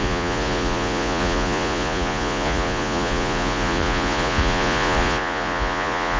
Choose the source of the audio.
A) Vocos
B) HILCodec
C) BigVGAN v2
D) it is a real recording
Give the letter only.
A